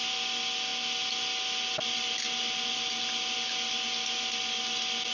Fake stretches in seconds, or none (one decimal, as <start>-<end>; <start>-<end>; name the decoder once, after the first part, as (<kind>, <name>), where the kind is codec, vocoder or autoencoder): none